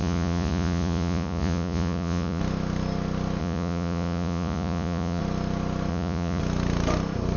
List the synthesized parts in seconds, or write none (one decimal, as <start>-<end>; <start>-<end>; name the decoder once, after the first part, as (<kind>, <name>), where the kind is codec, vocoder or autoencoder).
0.0-2.4 (vocoder, Vocos); 3.4-5.2; 5.9-6.4